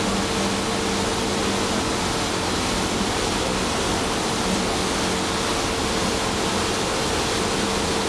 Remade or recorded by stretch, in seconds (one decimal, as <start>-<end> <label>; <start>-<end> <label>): 0.0-8.1 recorded